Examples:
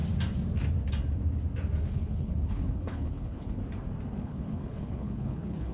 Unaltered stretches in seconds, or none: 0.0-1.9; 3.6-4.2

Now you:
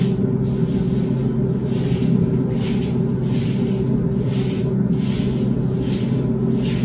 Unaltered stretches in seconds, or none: 0.0-6.8

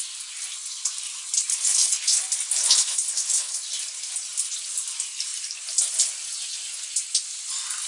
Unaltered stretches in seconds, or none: 0.0-1.5; 2.2-2.8; 3.6-7.9

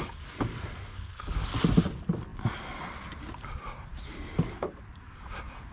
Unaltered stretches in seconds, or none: 0.0-0.9; 1.5-5.7

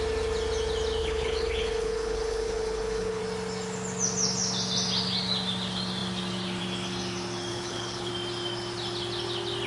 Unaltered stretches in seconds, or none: 0.0-1.0; 3.2-7.5; 8.1-9.7

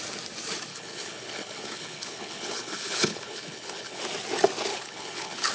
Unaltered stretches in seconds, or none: 0.0-0.7; 4.0-4.7

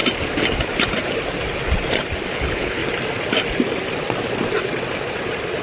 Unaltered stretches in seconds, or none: 0.0-2.3; 2.8-5.6

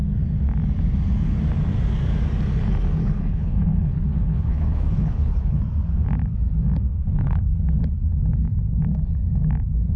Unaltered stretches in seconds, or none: 0.0-3.0; 5.6-6.9; 7.6-10.0